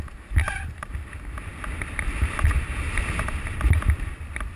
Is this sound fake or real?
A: real